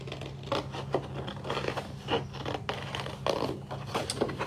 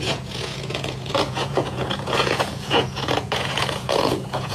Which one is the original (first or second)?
first